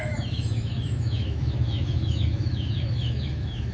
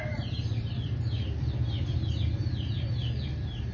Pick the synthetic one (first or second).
first